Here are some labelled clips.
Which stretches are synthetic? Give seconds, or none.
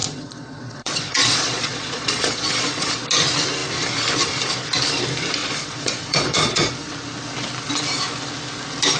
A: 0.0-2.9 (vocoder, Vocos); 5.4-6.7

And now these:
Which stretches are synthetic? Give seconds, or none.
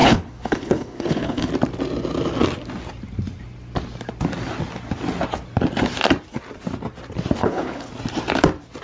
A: 0.0-1.5 (codec, HILCodec); 7.4-7.9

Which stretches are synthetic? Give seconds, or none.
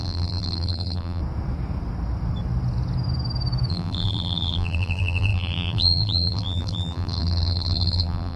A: 0.0-1.2 (vocoder, BigVGAN v2); 3.7-8.4